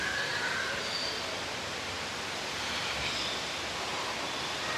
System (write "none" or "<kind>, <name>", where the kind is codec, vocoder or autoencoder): none